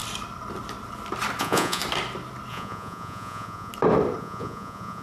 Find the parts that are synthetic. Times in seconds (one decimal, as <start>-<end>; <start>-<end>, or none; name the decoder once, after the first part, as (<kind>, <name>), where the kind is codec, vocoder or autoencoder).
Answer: 1.4-1.8 (vocoder, Vocos); 2.5-3.7; 4.2-5.0